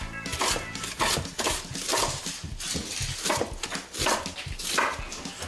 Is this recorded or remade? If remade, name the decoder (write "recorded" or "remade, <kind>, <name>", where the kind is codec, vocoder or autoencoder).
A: recorded